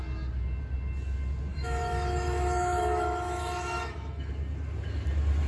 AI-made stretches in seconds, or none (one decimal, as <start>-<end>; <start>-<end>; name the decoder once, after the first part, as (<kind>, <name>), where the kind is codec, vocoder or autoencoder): 1.5-4.3 (autoencoder, DAC-VAE)